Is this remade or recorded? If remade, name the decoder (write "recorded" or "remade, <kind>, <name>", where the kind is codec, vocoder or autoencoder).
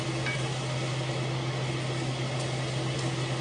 recorded